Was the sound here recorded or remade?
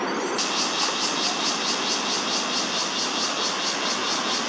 recorded